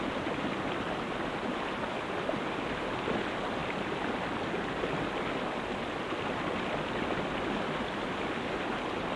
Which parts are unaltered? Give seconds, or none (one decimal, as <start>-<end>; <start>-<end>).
0.0-9.2